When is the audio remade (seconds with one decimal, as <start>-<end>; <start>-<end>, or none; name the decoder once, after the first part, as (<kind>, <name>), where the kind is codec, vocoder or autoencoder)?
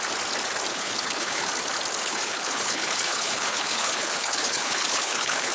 0.7-1.5 (codec, HILCodec); 2.0-5.5